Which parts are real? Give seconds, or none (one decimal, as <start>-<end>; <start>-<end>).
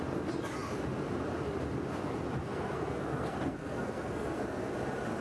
0.0-2.4; 4.7-5.2